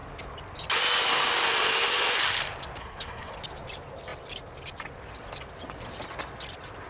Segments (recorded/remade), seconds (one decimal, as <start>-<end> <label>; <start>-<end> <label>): 0.0-2.8 recorded; 2.8-3.3 remade; 3.3-6.9 recorded